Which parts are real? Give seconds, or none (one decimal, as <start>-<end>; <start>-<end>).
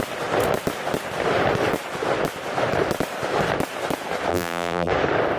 0.0-4.3; 4.9-5.4